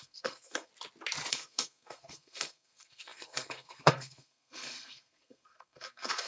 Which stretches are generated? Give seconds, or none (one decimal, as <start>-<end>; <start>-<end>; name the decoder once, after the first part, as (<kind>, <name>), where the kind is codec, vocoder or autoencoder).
0.0-0.7 (codec, SNAC); 1.3-6.3